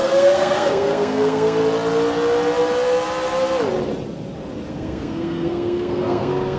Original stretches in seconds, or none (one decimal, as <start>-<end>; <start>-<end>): 1.6-4.7